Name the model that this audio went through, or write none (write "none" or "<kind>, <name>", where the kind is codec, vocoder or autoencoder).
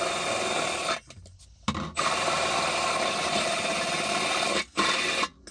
none